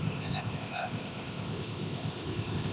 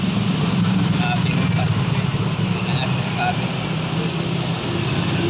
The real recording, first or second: second